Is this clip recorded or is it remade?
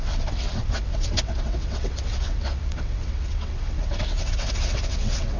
remade